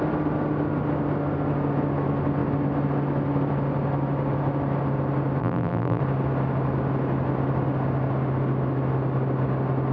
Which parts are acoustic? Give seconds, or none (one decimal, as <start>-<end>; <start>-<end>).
0.0-5.4; 6.0-9.9